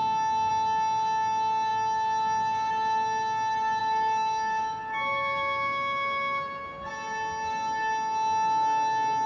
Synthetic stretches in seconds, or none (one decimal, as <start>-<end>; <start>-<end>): 3.8-6.9